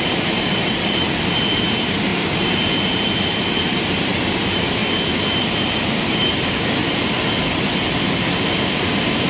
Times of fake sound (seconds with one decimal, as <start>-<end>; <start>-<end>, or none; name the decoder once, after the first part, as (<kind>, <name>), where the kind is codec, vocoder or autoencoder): 0.0-4.8 (vocoder, BigVGAN v2); 5.4-6.8; 8.7-9.3